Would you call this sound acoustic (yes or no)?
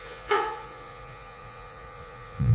no